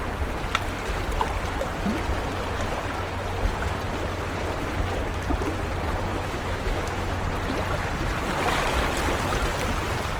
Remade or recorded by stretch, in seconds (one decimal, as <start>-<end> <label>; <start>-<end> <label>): 0.0-6.1 recorded; 6.1-7.2 remade; 7.2-10.2 recorded